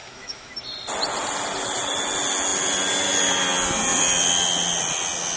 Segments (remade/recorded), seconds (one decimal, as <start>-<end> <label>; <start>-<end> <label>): 0.0-0.5 remade; 0.5-5.4 recorded